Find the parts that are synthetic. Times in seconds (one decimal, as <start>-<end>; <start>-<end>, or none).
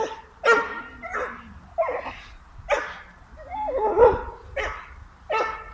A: none